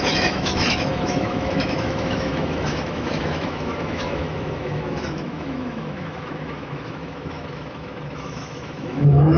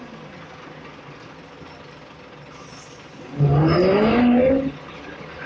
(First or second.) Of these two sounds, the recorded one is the second